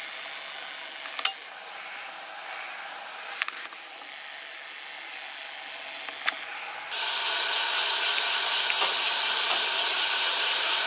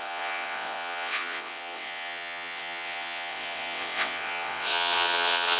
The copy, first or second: second